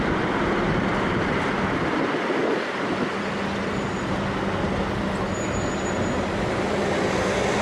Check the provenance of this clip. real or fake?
real